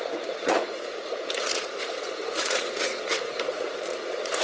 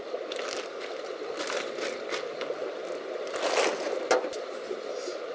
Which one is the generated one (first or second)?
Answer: first